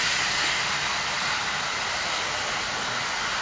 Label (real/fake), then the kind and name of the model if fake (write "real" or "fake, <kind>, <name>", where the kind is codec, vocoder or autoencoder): real